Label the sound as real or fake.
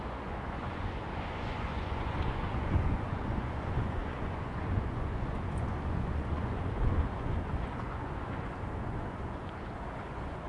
fake